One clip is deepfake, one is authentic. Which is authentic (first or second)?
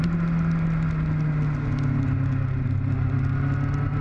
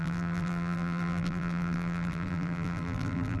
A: first